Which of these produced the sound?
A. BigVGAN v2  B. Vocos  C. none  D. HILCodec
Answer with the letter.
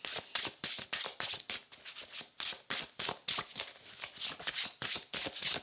C